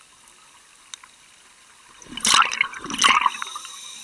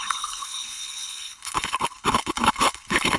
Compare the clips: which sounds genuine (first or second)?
first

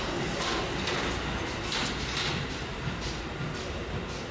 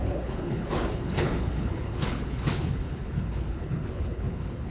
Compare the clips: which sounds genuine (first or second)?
first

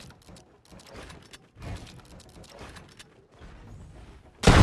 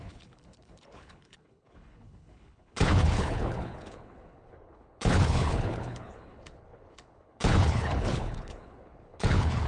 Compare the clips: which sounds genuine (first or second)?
first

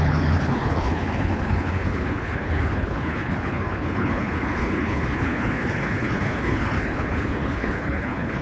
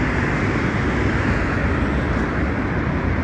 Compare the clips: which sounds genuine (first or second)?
second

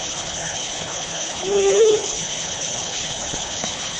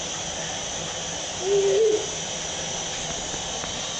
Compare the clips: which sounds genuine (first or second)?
second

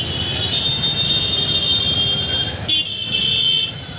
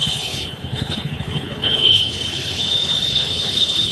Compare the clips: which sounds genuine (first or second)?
first